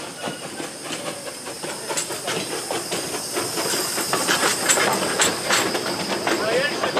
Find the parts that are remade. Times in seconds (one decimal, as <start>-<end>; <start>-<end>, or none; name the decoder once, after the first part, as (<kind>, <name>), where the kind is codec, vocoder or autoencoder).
none